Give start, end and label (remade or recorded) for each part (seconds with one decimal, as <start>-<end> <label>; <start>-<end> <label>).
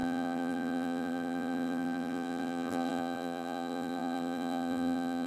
0.0-5.3 remade